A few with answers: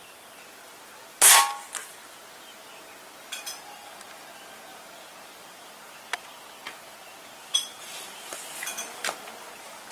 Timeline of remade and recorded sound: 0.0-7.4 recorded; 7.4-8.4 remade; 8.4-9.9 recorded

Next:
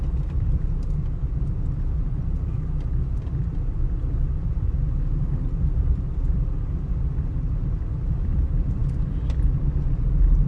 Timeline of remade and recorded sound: 0.0-8.8 remade; 8.8-10.1 recorded; 10.1-10.5 remade

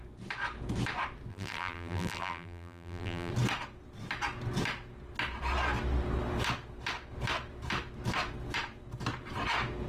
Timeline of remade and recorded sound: 0.0-1.3 recorded; 1.3-3.3 remade; 3.3-9.9 recorded

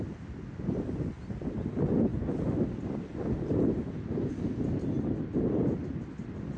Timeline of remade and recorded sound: 0.0-6.6 recorded

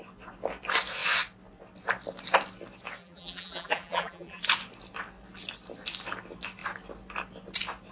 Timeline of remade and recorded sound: 0.0-3.0 recorded; 3.0-4.4 remade; 4.4-7.9 recorded